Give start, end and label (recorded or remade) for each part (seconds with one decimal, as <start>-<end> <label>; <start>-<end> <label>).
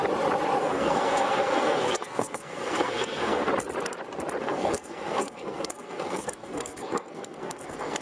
0.0-0.6 recorded; 0.6-3.5 remade; 3.5-4.4 recorded; 4.4-8.0 remade